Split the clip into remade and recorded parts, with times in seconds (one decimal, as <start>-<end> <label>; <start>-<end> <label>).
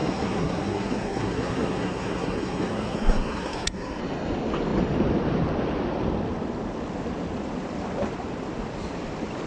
0.0-4.0 remade; 4.0-9.5 recorded